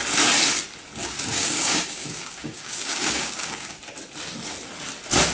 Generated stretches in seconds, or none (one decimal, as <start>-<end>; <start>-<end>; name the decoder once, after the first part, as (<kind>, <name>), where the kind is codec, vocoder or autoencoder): 1.0-3.8 (codec, DAC)

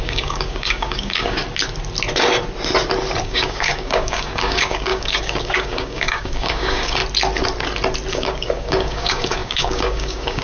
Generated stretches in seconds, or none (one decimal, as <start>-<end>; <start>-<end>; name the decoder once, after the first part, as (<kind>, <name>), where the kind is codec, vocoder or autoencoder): 0.0-1.4 (codec, DAC); 3.2-7.0; 8.1-10.4

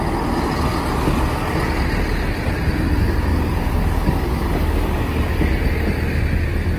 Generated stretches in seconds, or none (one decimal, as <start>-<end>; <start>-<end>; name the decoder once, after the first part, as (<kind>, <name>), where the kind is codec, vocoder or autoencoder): 3.3-5.5 (codec, DAC)

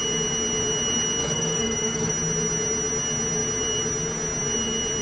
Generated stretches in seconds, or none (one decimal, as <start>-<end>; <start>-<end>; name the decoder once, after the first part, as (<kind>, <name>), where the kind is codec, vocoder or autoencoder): 1.2-2.1 (codec, DAC)

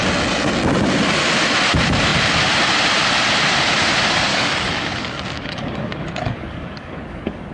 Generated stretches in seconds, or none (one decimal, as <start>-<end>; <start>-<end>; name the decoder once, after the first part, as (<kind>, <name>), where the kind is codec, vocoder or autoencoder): 4.3-7.5 (codec, DAC)

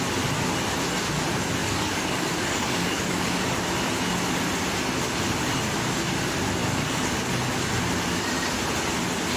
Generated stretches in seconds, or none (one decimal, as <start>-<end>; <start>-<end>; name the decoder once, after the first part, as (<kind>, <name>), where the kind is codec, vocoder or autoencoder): 1.6-3.4 (codec, DAC); 6.6-7.3

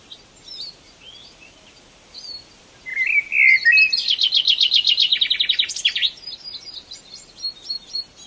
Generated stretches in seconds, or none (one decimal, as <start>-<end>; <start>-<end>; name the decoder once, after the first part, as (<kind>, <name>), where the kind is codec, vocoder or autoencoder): none